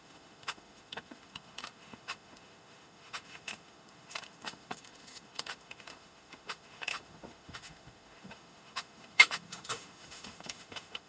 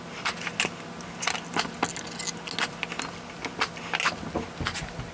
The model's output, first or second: first